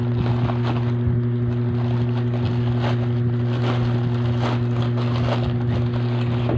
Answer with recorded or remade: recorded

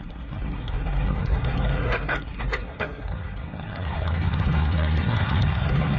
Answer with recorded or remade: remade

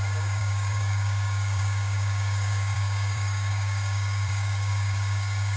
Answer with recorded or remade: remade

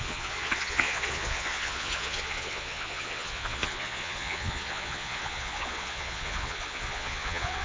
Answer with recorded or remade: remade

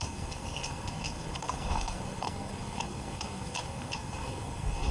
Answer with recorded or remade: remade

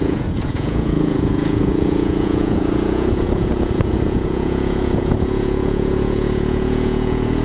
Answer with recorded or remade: remade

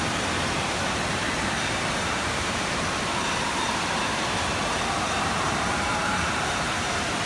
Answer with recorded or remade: remade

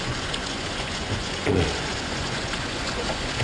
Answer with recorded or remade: remade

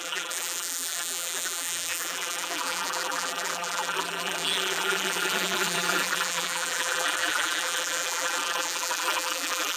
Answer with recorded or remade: remade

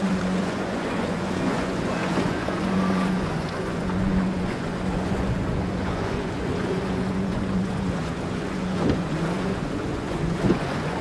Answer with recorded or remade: remade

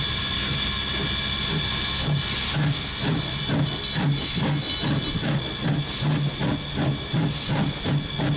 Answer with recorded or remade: recorded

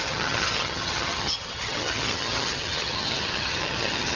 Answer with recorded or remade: remade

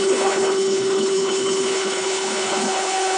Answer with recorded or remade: remade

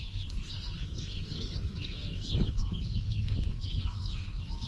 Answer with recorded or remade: remade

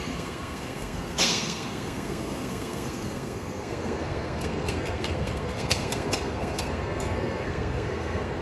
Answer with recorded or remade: remade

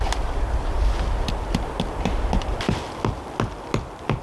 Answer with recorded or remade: recorded